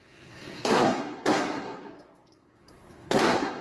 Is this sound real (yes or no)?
no